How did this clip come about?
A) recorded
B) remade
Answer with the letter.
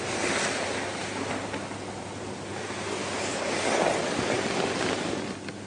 A